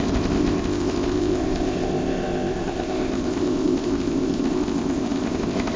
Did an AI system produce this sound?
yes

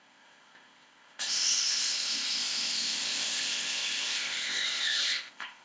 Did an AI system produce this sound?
yes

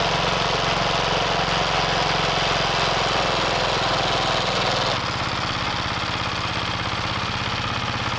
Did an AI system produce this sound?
no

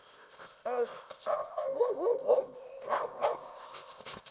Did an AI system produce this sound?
yes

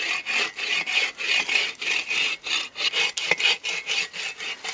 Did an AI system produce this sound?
no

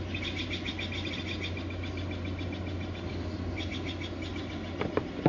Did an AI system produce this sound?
no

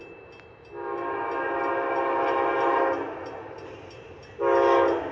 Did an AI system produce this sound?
no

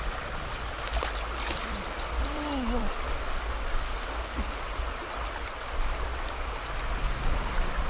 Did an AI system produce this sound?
no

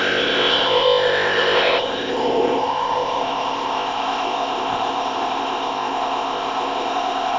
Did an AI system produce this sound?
yes